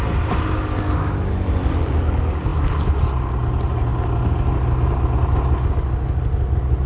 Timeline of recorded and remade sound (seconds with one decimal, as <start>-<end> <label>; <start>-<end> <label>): 0.0-6.9 recorded